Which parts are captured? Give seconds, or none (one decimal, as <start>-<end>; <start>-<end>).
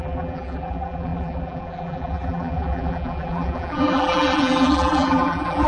none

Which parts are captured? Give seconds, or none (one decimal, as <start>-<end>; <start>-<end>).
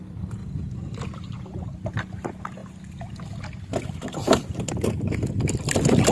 0.4-1.7; 2.6-4.9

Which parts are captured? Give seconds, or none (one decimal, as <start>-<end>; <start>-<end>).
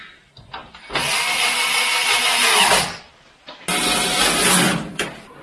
0.0-5.4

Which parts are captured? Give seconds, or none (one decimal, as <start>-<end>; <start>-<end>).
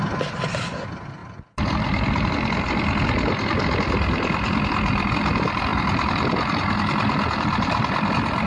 0.0-1.2; 2.6-5.7